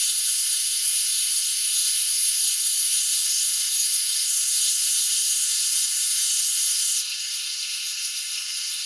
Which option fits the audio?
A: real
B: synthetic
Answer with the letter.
B